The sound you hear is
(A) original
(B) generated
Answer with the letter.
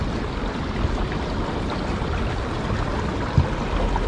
A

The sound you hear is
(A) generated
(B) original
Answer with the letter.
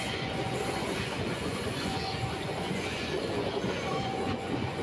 A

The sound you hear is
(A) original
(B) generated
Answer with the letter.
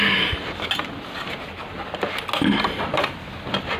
A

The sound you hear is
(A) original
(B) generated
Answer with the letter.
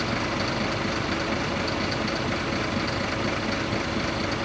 A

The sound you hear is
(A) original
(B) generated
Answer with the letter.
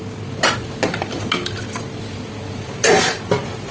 A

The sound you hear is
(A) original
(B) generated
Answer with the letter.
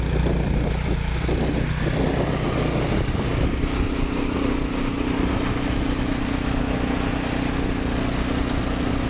A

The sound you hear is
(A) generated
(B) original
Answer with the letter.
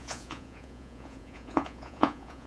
A